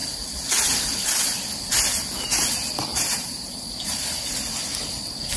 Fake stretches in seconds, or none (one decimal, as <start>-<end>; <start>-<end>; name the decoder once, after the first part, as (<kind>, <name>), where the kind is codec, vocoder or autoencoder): 1.9-2.5 (vocoder, BigVGAN v2); 2.9-4.3